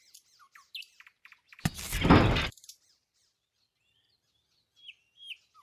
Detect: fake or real real